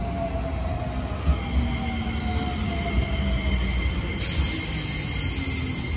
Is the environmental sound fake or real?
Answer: real